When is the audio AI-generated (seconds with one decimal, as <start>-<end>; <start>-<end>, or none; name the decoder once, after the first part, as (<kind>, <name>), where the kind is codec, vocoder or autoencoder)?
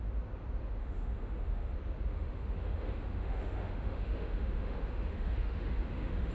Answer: 0.8-1.7 (autoencoder, DAC-VAE); 2.1-6.3